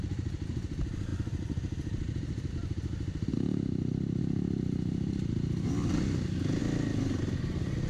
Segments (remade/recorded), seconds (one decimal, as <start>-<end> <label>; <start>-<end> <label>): 0.0-1.1 recorded; 1.1-2.5 remade; 2.5-3.3 recorded; 3.3-4.2 remade; 4.2-7.9 recorded